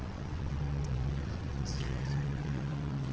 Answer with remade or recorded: remade